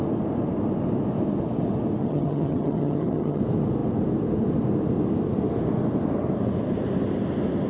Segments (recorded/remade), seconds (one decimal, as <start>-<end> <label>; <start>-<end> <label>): 0.0-2.0 recorded; 2.0-3.4 remade; 3.4-7.7 recorded